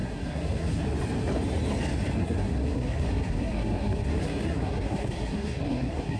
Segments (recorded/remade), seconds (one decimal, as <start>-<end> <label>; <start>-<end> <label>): 0.0-0.8 remade; 0.8-2.2 recorded; 2.2-6.2 remade